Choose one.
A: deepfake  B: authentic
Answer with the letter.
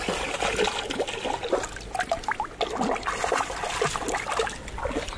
B